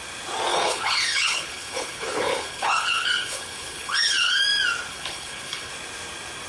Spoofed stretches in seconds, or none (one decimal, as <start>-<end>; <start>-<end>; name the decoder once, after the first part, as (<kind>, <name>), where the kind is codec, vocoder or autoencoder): 0.5-4.4 (codec, HILCodec); 4.9-5.7